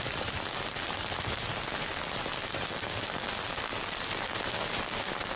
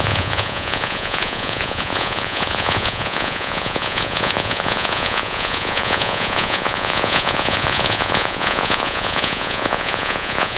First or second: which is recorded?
first